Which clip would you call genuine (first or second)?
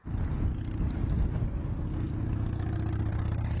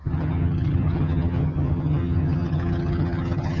first